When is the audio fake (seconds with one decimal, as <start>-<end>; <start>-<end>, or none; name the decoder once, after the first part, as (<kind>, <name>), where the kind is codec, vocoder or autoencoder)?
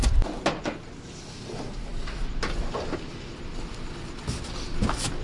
none